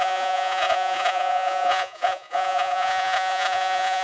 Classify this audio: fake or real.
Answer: fake